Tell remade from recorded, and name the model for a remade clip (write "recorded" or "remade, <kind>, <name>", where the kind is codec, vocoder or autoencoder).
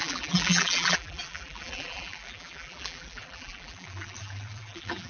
remade, vocoder, BigVGAN v2